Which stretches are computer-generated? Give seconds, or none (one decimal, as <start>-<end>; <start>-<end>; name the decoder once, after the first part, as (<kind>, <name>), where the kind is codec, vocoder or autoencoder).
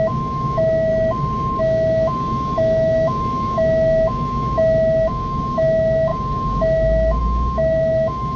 0.0-0.9 (autoencoder, DAC-VAE); 1.6-8.4